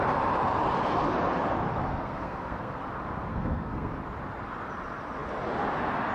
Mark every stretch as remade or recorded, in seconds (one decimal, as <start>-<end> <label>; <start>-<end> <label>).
0.0-1.9 recorded; 1.9-2.8 remade; 2.8-3.3 recorded; 3.3-3.9 remade; 3.9-6.1 recorded

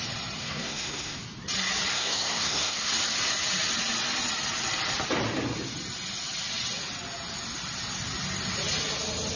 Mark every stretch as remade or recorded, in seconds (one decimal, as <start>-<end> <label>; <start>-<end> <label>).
0.0-0.4 recorded; 0.4-1.2 remade; 1.2-1.9 recorded; 1.9-2.9 remade; 2.9-9.4 recorded

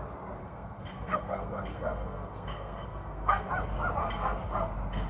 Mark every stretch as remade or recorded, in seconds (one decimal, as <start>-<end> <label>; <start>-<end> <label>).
0.0-0.4 recorded; 0.4-3.5 remade; 3.5-4.0 recorded; 4.0-4.5 remade; 4.5-5.1 recorded